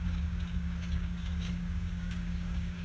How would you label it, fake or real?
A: fake